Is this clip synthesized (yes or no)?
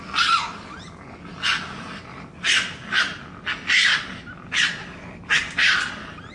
no